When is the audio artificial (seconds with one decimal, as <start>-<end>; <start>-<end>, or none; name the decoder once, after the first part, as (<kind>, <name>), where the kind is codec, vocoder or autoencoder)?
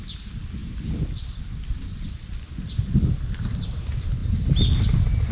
0.6-3.8 (vocoder, BigVGAN v2)